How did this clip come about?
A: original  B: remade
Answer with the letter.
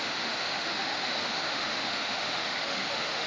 B